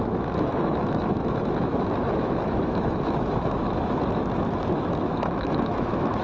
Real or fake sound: fake